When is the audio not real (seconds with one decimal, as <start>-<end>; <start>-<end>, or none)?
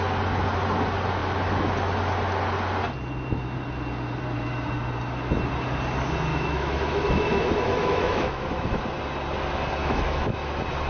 6.3-8.8; 9.8-10.5